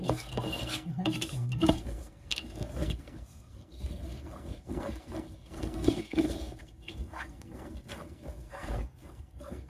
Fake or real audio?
fake